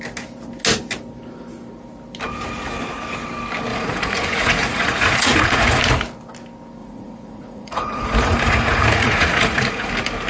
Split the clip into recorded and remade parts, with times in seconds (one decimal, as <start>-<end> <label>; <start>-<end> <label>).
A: 0.0-3.7 recorded; 3.7-5.8 remade; 5.8-6.8 recorded; 6.8-9.9 remade; 9.9-10.3 recorded